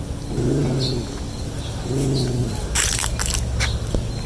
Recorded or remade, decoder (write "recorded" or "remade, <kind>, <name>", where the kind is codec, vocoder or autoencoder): recorded